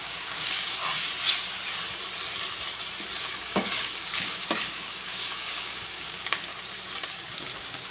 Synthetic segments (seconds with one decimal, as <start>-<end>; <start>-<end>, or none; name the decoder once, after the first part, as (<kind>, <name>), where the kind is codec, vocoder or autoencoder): 0.0-0.8 (codec, DAC); 3.4-6.5; 7.1-7.9